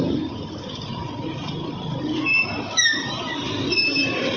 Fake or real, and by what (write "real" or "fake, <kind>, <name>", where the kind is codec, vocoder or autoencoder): real